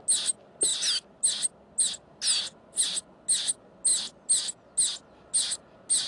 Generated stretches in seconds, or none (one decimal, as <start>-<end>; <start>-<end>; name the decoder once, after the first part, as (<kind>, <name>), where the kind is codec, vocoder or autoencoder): none